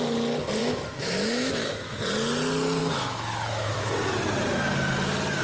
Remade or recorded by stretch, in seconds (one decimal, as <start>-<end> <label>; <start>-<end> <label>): 0.0-0.6 recorded; 0.6-2.0 remade; 2.0-2.8 recorded; 2.8-3.9 remade; 3.9-5.4 recorded